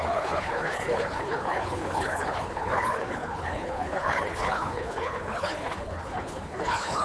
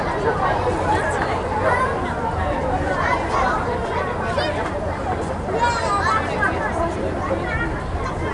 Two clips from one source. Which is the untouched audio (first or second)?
second